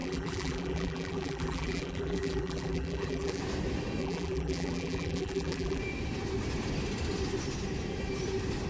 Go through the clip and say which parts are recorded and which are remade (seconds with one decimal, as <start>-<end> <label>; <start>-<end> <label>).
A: 0.0-3.4 remade; 3.4-4.0 recorded; 4.0-5.8 remade; 5.8-8.7 recorded